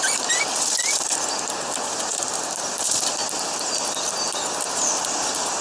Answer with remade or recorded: recorded